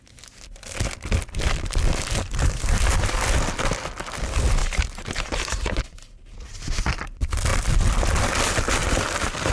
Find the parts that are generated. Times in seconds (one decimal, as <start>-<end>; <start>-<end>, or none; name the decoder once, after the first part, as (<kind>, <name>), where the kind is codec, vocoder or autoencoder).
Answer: 4.6-5.8 (vocoder, BigVGAN v2); 8.8-9.5

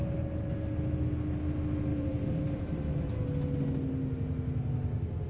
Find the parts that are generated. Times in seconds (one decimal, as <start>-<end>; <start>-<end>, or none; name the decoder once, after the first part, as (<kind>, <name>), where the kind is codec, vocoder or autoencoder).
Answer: 1.9-3.1 (vocoder, BigVGAN v2)

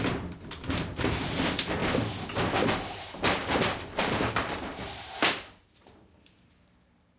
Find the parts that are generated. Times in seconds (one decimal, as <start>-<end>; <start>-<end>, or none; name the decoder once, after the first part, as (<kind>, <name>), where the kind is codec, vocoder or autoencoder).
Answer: 0.0-1.8 (vocoder, BigVGAN v2); 2.7-7.2